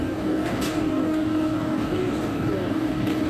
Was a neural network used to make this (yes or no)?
yes